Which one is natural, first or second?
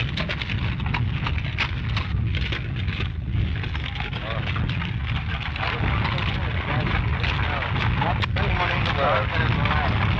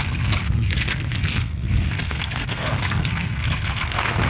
first